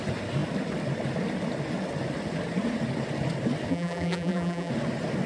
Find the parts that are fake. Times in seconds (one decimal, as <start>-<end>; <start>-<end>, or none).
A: 3.7-4.7